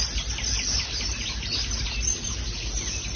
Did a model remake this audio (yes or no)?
no